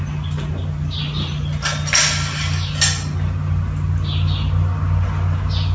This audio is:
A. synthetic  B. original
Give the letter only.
B